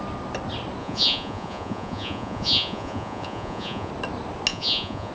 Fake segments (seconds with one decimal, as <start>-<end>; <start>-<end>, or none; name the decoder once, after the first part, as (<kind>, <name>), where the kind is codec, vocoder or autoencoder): 0.8-3.9 (vocoder, Vocos); 4.5-5.1